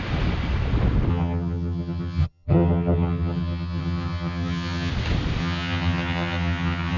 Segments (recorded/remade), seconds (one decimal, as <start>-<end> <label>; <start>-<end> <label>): 0.0-1.1 recorded; 1.1-4.9 remade; 4.9-5.4 recorded; 5.4-7.0 remade